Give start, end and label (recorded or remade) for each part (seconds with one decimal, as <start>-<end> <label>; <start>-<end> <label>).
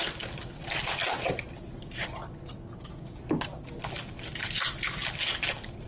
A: 0.0-5.9 recorded